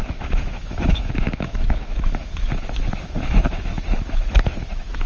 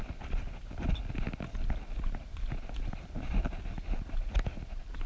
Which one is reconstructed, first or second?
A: first